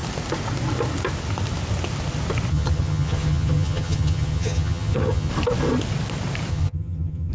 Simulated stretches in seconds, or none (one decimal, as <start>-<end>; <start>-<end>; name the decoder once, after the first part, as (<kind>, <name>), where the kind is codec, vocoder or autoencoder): 2.5-5.3 (vocoder, HiFi-GAN); 6.5-7.3